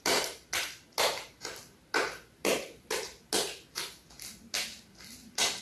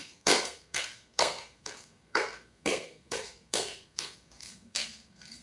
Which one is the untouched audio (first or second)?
first